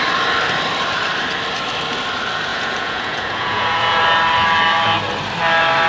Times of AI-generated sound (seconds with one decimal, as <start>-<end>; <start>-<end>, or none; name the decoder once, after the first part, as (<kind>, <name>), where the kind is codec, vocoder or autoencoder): 2.5-4.0 (vocoder, Vocos)